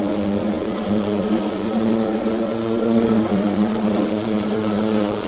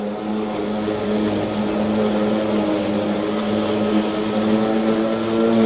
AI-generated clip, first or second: first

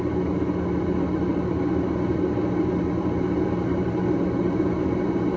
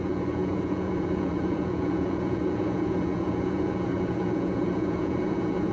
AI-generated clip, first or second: second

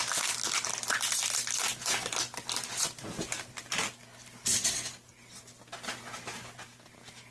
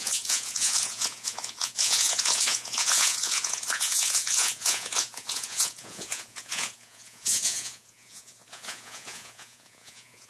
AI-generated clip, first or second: second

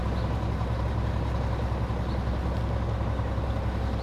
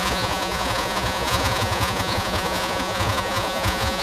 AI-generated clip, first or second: second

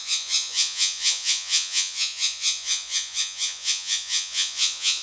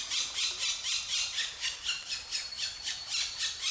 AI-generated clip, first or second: first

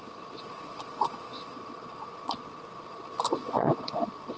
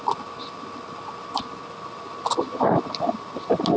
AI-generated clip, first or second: first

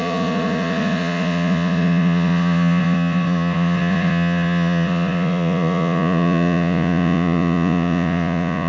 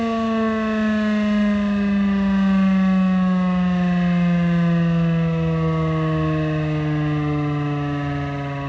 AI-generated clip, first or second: first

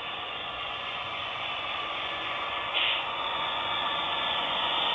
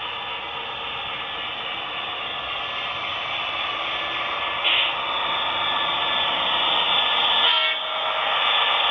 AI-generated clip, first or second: first